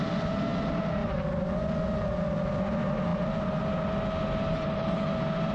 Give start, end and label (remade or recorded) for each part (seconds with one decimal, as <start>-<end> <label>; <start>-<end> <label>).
0.0-4.5 recorded; 4.5-5.1 remade; 5.1-5.5 recorded